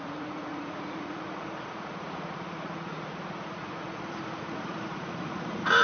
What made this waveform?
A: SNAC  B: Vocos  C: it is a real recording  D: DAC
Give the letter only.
B